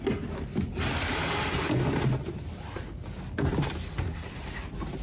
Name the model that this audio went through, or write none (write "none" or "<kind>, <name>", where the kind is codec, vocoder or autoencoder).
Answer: none